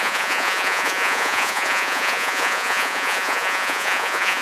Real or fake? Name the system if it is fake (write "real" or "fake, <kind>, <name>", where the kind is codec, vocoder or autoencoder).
fake, vocoder, Vocos